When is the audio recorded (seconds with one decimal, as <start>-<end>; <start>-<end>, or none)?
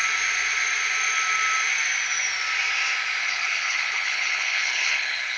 0.0-3.2